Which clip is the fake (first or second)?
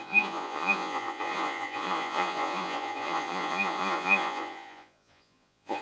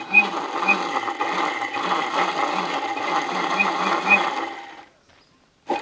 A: first